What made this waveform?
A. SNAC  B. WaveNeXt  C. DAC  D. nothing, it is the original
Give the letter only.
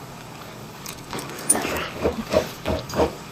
C